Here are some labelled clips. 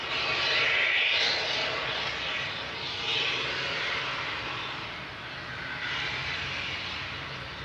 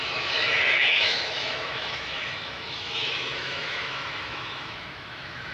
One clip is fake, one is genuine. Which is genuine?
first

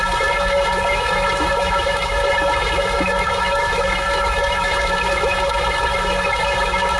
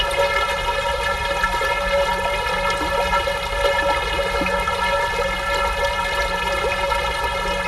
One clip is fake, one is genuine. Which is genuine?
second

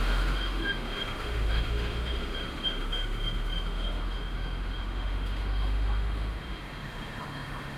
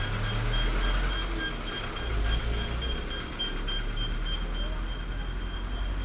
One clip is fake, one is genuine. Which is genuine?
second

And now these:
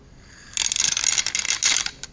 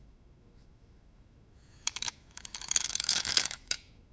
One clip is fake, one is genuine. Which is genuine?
first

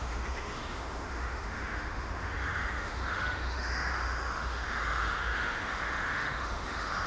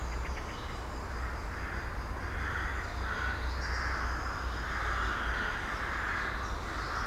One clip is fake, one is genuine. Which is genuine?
second